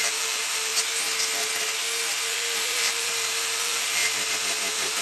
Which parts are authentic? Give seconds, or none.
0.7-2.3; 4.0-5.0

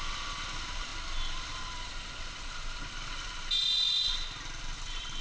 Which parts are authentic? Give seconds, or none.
0.0-5.2

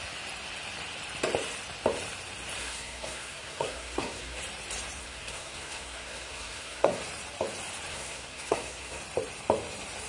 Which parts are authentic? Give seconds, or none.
0.0-2.6; 4.4-5.0; 7.0-7.9; 9.0-10.1